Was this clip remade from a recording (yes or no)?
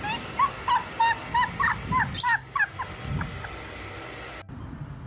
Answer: no